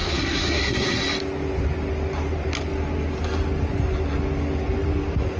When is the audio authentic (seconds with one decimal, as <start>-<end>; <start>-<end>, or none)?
1.0-5.4